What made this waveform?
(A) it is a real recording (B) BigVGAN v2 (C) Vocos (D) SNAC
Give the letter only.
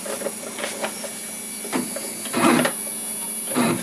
A